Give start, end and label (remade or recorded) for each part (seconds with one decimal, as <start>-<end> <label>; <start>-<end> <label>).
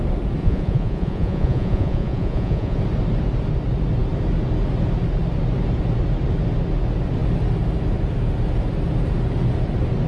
0.0-0.4 recorded; 0.4-2.8 remade; 2.8-10.1 recorded